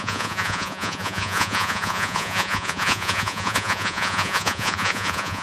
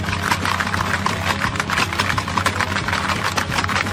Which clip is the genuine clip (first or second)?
second